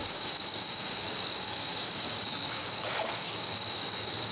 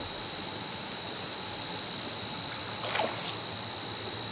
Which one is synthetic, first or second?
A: first